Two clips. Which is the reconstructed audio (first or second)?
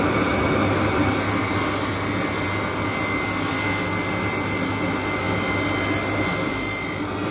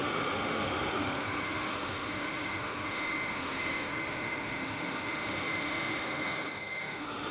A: second